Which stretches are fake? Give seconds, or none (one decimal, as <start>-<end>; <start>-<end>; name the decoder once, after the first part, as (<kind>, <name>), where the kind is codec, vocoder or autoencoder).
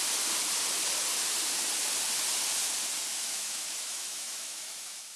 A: 3.1-5.2 (autoencoder, DAC-VAE)